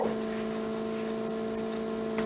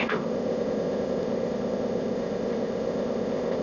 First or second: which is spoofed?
second